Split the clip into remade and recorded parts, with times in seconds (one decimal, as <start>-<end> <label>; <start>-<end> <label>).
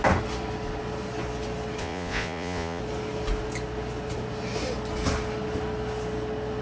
0.0-1.8 recorded; 1.8-2.8 remade; 2.8-6.6 recorded